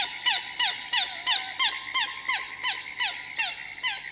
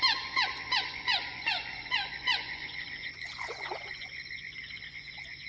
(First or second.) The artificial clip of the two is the second